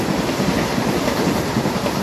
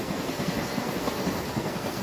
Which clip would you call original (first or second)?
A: first